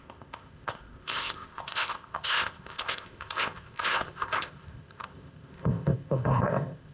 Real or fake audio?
fake